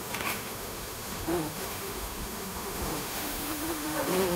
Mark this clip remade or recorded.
remade